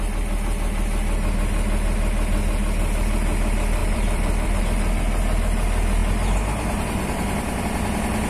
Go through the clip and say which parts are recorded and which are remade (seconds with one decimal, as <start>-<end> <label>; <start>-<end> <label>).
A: 0.0-3.8 recorded; 3.8-4.6 remade; 4.6-8.3 recorded

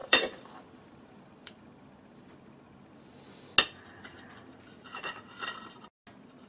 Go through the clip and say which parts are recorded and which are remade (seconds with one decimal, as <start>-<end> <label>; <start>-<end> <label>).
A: 0.0-2.3 remade; 2.3-6.5 recorded

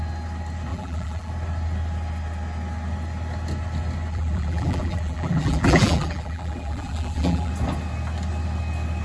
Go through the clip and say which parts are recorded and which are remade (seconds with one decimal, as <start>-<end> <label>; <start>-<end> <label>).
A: 0.0-0.7 recorded; 0.7-1.3 remade; 1.3-4.1 recorded; 4.1-7.5 remade; 7.5-9.0 recorded

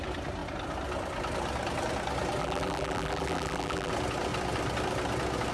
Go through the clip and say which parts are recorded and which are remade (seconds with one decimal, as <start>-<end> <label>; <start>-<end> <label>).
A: 0.0-2.4 recorded; 2.4-3.9 remade; 3.9-5.5 recorded

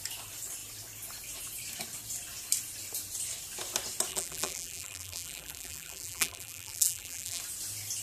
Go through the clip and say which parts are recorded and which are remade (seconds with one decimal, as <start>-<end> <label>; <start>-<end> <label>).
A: 0.0-4.1 recorded; 4.1-7.4 remade; 7.4-8.0 recorded